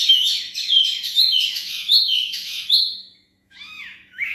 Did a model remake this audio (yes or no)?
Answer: yes